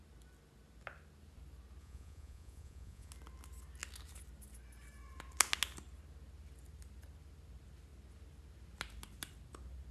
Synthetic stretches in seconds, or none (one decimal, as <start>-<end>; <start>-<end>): 1.8-3.1